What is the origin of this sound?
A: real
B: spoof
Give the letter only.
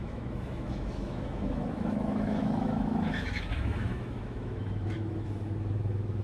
B